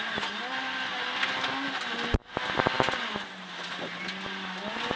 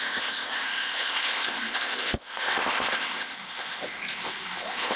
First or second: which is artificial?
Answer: second